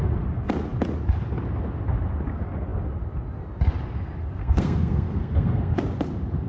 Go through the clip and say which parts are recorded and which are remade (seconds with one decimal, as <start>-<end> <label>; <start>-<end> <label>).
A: 0.0-4.4 recorded; 4.4-5.8 remade; 5.8-6.5 recorded